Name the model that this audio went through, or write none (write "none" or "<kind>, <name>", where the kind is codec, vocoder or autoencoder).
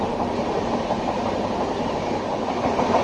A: none